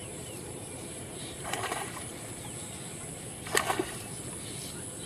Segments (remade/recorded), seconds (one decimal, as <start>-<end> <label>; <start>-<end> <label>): 0.0-2.1 remade; 2.1-5.1 recorded